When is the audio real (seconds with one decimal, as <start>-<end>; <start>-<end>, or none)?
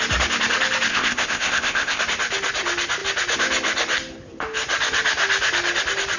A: 0.0-0.9; 2.0-6.2